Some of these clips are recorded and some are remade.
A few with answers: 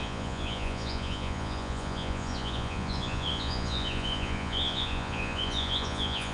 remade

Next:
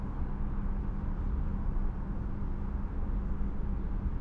recorded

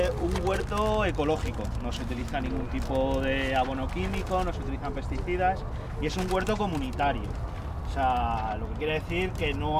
recorded